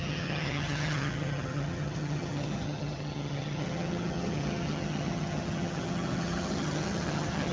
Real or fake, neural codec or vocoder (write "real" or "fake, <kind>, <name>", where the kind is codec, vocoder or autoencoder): fake, vocoder, HiFi-GAN